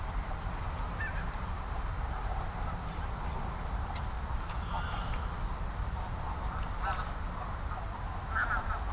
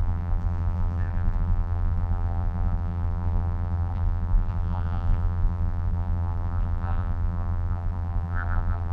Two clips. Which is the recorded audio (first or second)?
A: first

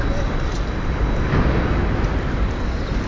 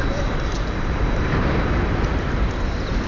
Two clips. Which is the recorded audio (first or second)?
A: first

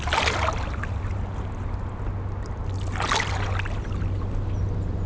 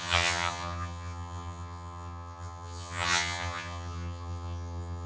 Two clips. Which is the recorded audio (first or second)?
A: first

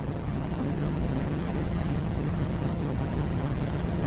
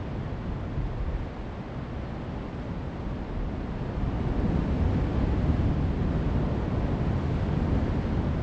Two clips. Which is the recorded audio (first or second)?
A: second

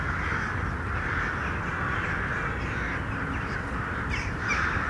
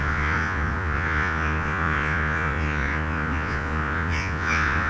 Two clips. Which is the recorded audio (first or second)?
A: first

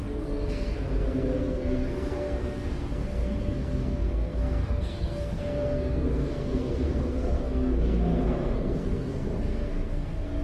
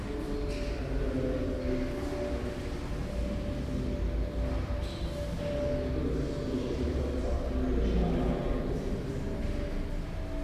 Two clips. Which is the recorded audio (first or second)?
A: second